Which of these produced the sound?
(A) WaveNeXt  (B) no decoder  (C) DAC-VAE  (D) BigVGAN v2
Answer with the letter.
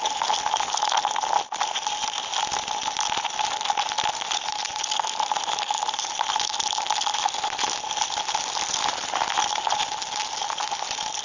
B